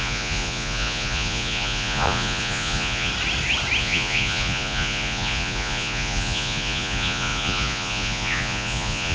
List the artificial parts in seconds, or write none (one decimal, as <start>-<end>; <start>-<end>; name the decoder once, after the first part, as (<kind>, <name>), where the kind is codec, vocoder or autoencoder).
0.0-3.1 (vocoder, Vocos); 3.8-9.1